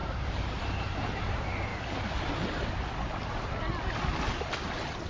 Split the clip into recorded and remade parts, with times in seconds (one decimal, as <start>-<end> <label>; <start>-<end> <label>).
0.0-1.7 remade; 1.7-4.3 recorded; 4.3-5.1 remade